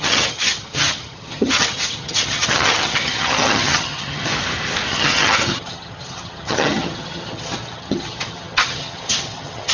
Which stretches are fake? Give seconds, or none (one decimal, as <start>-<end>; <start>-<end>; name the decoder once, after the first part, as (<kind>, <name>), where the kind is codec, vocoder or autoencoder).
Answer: 0.0-4.3 (vocoder, HiFi-GAN); 4.9-9.7